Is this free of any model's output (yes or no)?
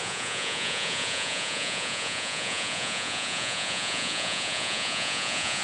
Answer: no